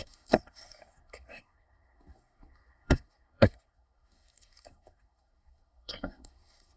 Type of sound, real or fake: fake